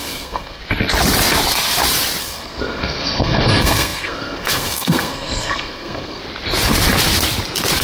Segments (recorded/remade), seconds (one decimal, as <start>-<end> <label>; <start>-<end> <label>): 0.0-0.6 remade; 0.6-2.2 recorded; 2.2-6.2 remade; 6.2-7.8 recorded